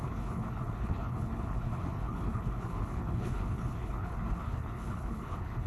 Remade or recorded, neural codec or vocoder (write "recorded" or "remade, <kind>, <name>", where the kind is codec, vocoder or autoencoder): remade, codec, HILCodec